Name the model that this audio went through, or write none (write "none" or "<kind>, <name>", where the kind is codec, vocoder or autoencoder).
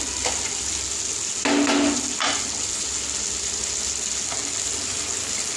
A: none